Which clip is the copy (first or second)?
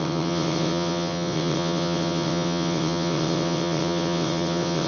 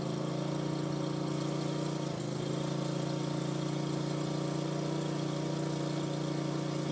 first